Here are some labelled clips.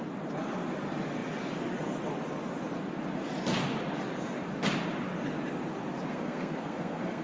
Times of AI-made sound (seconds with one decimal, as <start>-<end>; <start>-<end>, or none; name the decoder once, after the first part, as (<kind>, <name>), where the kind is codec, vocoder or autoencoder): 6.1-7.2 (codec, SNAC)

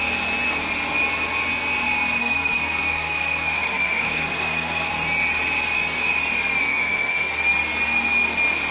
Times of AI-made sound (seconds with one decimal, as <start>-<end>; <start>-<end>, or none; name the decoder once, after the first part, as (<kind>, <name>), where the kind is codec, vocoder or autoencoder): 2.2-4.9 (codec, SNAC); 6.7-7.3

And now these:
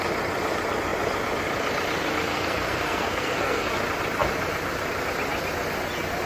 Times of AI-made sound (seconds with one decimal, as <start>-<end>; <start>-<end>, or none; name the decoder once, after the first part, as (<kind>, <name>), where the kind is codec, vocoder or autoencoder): 2.3-3.7 (codec, SNAC)

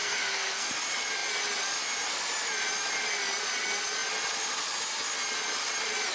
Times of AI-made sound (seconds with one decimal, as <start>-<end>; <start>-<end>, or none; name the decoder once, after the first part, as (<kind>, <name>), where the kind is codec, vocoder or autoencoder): 0.0-0.7 (codec, SNAC)

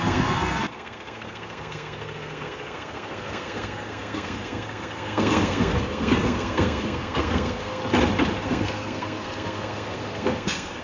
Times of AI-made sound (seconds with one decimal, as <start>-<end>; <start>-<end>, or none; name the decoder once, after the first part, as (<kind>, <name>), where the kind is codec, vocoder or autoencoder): 0.0-7.8 (codec, SNAC); 8.4-10.8